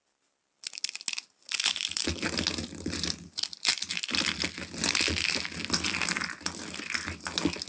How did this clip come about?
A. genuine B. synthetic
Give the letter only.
A